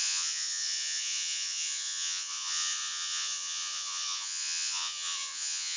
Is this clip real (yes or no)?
no